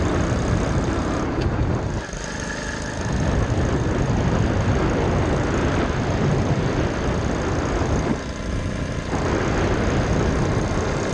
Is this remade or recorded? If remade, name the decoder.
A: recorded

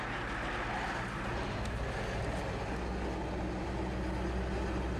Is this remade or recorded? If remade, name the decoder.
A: recorded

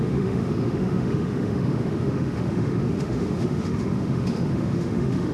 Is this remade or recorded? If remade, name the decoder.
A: remade, autoencoder, DAC-VAE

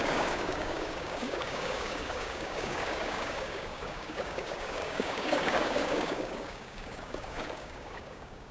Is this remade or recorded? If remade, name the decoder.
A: remade, codec, DAC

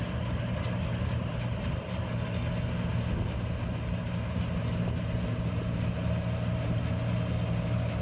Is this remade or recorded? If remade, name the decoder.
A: recorded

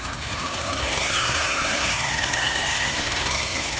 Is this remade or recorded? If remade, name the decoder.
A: remade, codec, SNAC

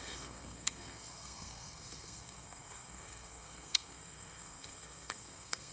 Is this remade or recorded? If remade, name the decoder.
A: remade, codec, SNAC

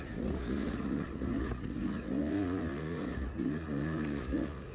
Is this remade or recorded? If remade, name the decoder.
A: remade, vocoder, Vocos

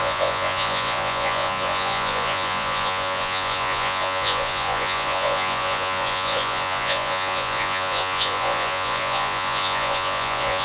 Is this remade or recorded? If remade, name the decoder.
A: remade, vocoder, Vocos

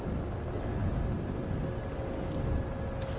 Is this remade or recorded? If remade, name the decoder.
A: recorded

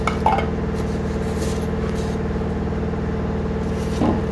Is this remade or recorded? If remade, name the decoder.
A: recorded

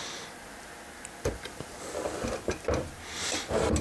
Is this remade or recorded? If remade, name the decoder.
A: recorded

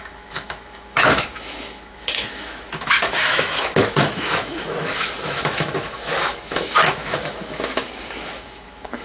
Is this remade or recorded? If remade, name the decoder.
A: remade, autoencoder, DAC-VAE